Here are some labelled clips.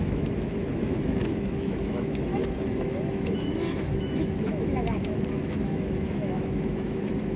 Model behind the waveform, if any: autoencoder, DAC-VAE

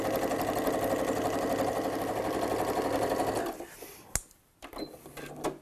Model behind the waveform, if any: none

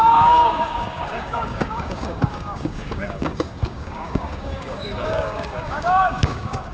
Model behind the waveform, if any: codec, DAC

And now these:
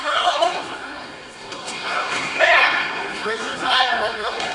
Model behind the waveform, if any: codec, SNAC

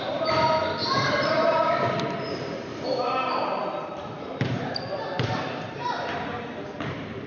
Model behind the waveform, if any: vocoder, BigVGAN v2